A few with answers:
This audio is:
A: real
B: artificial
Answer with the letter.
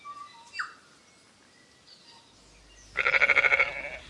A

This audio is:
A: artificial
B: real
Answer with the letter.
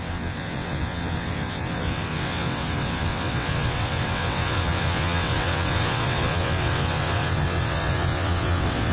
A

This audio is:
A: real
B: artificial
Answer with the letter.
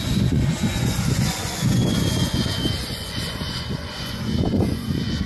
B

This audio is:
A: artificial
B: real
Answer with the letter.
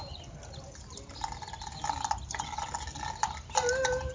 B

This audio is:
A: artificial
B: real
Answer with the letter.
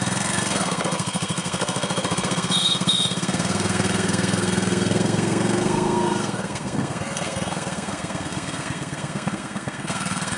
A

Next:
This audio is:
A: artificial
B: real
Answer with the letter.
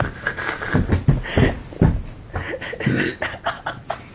B